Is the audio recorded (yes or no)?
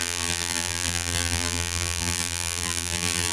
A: no